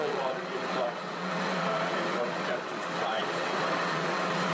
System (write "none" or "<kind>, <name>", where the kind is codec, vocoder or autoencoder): vocoder, WaveNeXt